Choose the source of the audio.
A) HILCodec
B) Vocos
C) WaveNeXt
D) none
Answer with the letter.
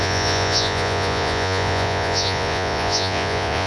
B